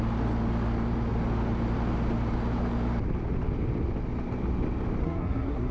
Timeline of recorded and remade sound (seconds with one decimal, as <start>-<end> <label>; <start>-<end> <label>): 0.0-5.0 recorded; 5.0-5.7 remade